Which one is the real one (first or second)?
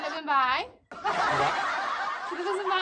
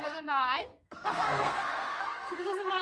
first